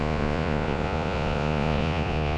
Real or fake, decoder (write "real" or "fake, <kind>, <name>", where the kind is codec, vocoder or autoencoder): fake, vocoder, Vocos